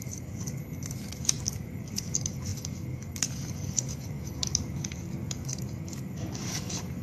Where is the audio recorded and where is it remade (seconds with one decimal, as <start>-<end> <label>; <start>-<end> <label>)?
0.0-0.6 remade; 0.6-1.2 recorded; 1.2-7.0 remade

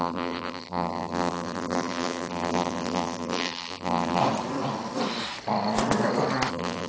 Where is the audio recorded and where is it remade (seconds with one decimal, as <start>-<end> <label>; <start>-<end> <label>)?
0.0-4.2 remade; 4.2-6.5 recorded; 6.5-6.9 remade